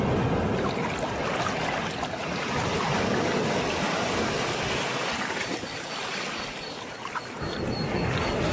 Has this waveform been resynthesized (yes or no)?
no